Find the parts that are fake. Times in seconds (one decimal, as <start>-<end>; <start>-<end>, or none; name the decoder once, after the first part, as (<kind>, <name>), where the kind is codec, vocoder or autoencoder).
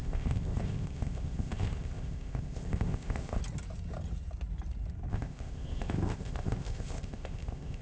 0.0-3.4 (codec, ZipCodec); 5.1-7.8